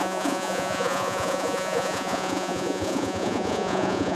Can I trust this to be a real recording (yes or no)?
no